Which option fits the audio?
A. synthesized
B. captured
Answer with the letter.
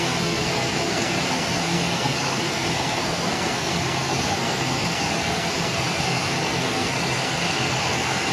A